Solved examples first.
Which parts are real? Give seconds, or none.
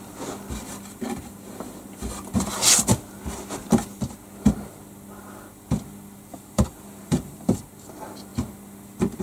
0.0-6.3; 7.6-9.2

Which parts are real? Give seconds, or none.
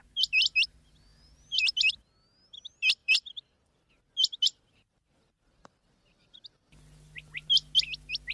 0.0-1.1; 1.9-3.0; 3.9-8.3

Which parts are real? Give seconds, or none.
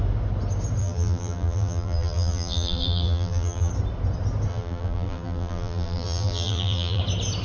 0.0-0.8; 3.7-4.5; 7.0-7.4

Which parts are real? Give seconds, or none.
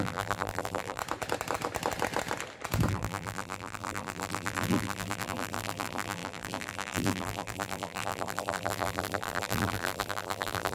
1.0-2.9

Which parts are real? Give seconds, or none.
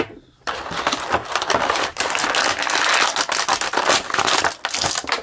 0.0-1.2; 2.1-5.2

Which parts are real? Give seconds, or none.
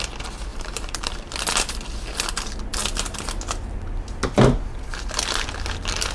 0.0-0.5; 1.3-6.1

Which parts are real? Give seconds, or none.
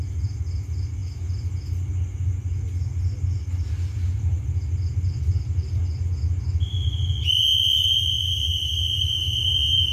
0.0-8.5; 9.2-9.9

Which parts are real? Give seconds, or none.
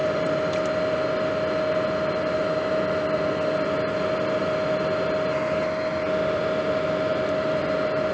0.0-8.1